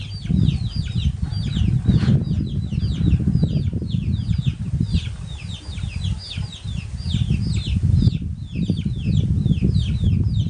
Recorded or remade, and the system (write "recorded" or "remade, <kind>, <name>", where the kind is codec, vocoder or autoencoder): recorded